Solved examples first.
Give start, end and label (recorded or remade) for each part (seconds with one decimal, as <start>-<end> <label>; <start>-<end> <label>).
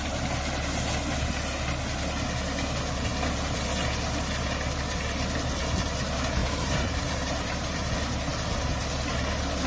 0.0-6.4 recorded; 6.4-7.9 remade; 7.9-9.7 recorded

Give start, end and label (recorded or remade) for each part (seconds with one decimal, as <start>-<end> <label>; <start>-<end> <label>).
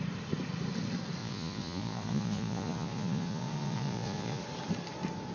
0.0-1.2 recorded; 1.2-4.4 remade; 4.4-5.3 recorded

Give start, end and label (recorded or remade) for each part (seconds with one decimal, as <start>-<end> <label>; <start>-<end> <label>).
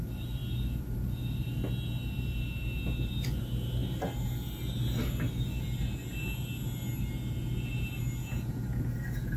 0.0-8.2 recorded; 8.2-8.8 remade; 8.8-9.4 recorded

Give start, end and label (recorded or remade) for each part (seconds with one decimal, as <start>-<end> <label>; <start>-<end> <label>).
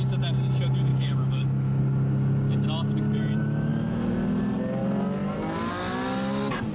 0.0-0.9 recorded; 0.9-1.8 remade; 1.8-6.7 recorded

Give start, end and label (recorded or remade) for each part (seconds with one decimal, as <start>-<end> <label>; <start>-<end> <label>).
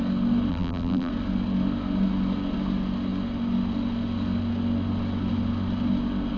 0.0-0.5 recorded; 0.5-1.1 remade; 1.1-6.4 recorded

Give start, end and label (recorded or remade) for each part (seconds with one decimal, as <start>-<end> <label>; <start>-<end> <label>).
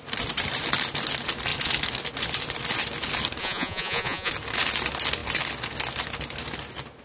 0.0-3.4 recorded; 3.4-4.3 remade; 4.3-7.0 recorded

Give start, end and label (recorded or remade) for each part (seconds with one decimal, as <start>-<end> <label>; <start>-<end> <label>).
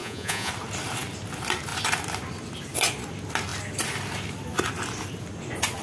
0.0-0.5 remade; 0.5-5.8 recorded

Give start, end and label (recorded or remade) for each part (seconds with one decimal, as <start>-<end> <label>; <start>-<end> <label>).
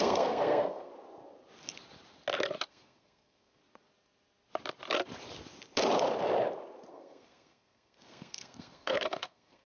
0.0-0.9 remade; 0.9-2.7 recorded; 2.7-3.6 remade; 3.6-6.9 recorded; 6.9-9.7 remade